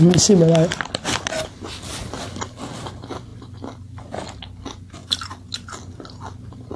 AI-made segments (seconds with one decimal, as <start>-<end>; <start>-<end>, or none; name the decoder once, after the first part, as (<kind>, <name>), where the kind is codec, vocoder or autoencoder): none